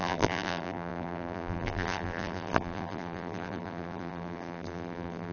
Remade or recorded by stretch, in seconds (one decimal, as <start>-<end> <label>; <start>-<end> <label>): 0.0-5.3 remade